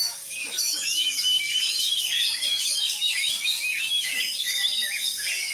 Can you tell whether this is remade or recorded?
remade